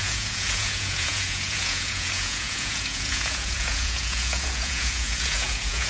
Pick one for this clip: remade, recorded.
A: remade